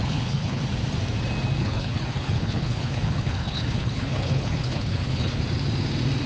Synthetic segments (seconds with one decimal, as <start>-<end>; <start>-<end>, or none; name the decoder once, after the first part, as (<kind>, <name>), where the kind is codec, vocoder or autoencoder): 0.0-0.6 (codec, HILCodec); 1.6-5.4